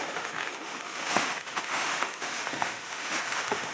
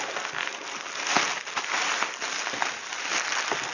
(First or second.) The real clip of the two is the second